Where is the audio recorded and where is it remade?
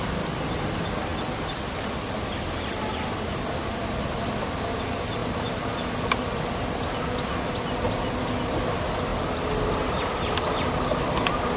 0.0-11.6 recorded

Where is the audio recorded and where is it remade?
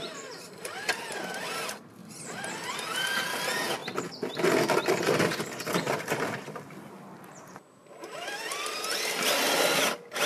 0.0-10.3 recorded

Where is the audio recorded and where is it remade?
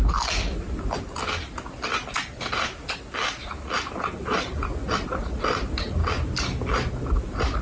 0.0-7.6 recorded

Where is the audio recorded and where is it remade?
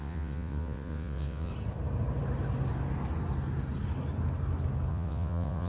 0.0-1.5 remade; 1.5-4.9 recorded; 4.9-5.7 remade